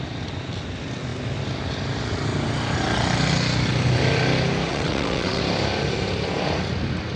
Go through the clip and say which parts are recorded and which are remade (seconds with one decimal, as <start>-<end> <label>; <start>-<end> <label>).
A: 0.0-4.7 recorded; 4.7-5.4 remade; 5.4-7.2 recorded